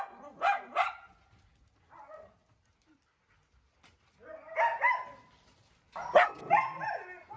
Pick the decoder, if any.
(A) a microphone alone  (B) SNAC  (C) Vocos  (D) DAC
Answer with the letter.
A